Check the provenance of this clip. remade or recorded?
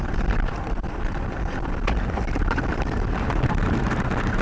remade